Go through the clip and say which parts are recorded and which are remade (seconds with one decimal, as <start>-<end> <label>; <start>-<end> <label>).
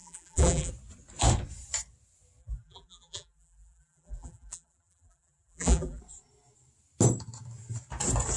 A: 0.0-0.7 remade; 0.7-2.4 recorded; 2.4-6.0 remade; 6.0-8.4 recorded